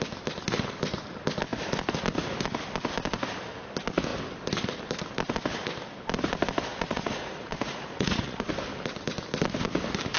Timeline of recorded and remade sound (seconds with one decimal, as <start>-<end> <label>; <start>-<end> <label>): 0.0-6.7 recorded; 6.7-8.5 remade; 8.5-10.2 recorded

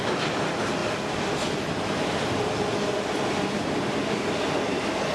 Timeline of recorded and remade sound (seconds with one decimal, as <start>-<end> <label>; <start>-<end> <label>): 0.0-5.1 recorded

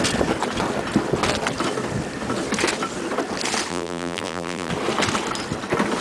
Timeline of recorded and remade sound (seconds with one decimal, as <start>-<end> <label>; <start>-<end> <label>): 0.0-3.7 recorded; 3.7-4.7 remade; 4.7-6.0 recorded

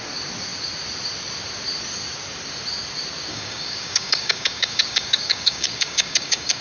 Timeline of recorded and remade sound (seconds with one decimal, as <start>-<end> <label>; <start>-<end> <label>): 0.0-3.3 recorded; 3.3-6.6 remade

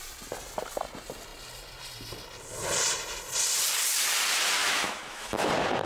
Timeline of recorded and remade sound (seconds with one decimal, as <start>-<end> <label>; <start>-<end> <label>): 0.0-4.6 recorded; 4.6-5.5 remade; 5.5-5.9 recorded

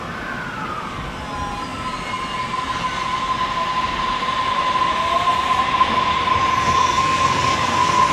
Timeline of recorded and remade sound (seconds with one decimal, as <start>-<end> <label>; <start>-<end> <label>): 0.0-6.6 recorded; 6.6-8.1 remade

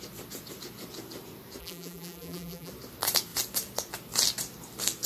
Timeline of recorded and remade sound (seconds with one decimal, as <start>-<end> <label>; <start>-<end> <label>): 0.0-1.6 recorded; 1.6-2.7 remade; 2.7-5.1 recorded

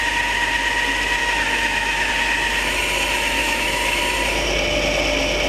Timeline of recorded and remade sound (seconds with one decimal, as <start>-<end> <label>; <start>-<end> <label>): 0.0-1.2 recorded; 1.2-2.1 remade; 2.1-3.4 recorded; 3.4-4.0 remade; 4.0-5.5 recorded